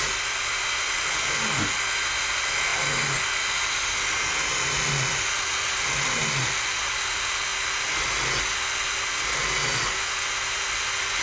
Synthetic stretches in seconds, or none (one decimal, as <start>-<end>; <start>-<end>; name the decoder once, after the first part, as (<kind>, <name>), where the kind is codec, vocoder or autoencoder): none